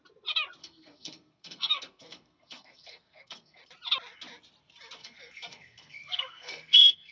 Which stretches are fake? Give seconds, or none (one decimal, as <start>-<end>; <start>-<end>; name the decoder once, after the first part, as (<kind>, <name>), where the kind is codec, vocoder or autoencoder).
0.6-3.6 (codec, SNAC); 5.0-7.1